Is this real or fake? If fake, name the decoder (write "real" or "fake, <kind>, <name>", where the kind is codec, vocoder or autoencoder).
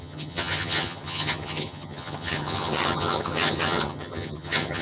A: fake, vocoder, HiFi-GAN